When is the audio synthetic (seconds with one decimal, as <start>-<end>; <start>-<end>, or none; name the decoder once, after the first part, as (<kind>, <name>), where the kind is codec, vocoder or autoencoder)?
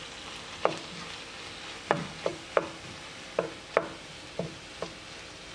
none